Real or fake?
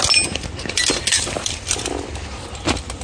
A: real